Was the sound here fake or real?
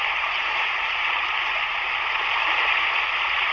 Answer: real